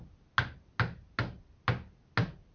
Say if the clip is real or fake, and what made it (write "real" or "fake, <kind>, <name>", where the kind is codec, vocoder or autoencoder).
real